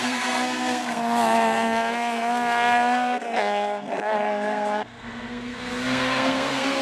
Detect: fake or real fake